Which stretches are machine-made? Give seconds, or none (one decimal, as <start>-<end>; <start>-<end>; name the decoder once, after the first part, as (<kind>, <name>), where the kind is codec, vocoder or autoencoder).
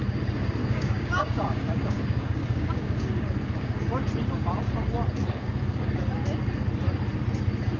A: 0.6-3.8 (codec, DAC); 5.2-5.9